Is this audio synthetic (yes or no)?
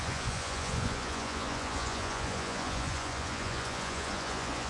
yes